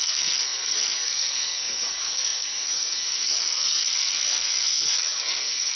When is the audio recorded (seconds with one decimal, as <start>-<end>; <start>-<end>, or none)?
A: none